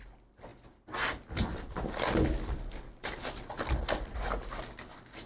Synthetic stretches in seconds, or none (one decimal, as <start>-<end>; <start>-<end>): 0.0-5.3

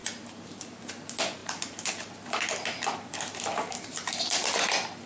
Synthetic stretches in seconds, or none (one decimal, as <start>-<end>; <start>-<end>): 0.0-0.8; 1.4-2.1; 3.5-4.5

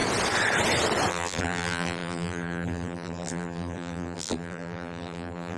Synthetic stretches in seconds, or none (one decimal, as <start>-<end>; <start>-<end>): 1.1-5.6

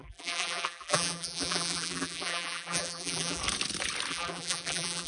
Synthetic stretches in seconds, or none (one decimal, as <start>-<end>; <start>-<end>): 0.0-3.4; 4.1-5.1

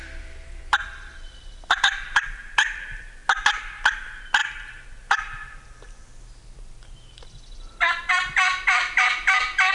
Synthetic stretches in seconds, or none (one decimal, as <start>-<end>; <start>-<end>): 0.0-3.2; 3.9-9.7